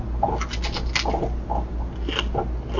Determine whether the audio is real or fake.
real